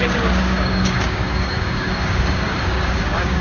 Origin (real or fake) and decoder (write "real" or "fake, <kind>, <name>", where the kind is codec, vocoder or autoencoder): fake, codec, DAC